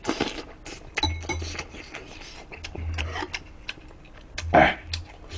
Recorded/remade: recorded